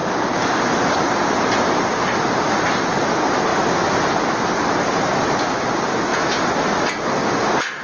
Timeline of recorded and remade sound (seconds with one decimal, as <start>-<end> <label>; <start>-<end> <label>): 0.0-7.8 recorded